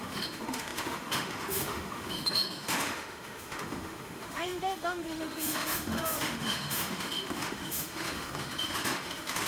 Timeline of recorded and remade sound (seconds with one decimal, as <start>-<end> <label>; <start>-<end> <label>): 0.0-9.5 remade